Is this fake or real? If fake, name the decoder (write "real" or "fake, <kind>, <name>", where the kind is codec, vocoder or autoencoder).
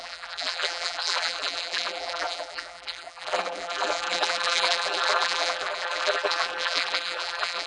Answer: fake, vocoder, BigVGAN v2